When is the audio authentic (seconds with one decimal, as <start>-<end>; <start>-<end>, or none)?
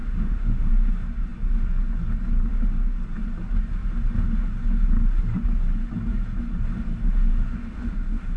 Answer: 0.7-7.3